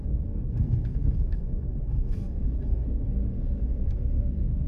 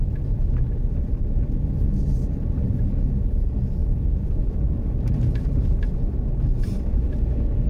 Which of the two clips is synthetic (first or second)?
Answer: first